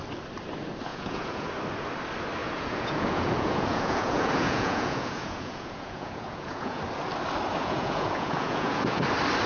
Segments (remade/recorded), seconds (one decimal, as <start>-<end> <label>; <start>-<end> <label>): 0.0-0.9 recorded; 0.9-1.5 remade; 1.5-2.4 recorded; 2.4-6.8 remade; 6.8-7.6 recorded; 7.6-9.0 remade; 9.0-9.5 recorded